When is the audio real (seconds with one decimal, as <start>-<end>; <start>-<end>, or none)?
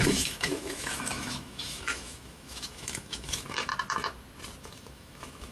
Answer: 3.7-4.6